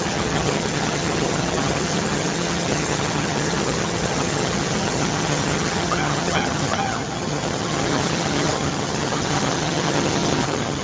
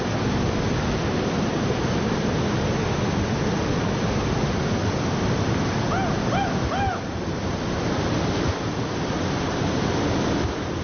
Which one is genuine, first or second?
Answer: second